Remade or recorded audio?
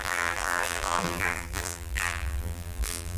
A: remade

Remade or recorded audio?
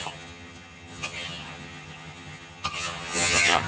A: remade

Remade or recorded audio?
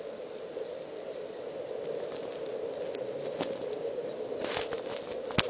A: recorded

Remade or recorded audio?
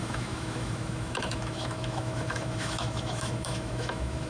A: remade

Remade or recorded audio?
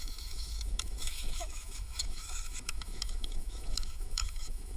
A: remade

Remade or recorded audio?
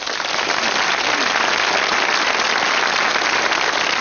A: recorded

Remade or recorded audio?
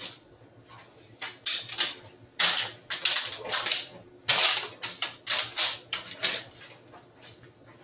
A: recorded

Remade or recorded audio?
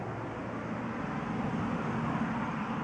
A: recorded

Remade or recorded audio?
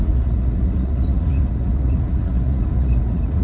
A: remade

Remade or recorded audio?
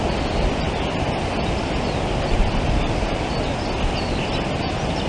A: recorded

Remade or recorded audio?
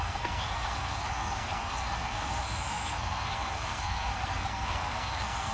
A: remade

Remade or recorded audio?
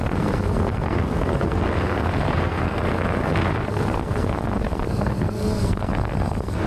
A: remade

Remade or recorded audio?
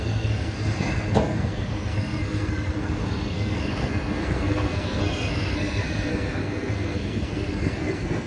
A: remade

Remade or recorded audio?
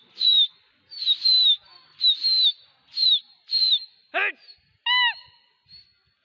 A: recorded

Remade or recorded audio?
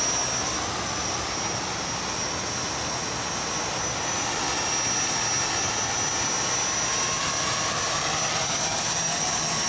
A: recorded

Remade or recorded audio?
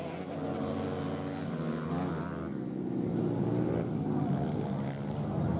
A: recorded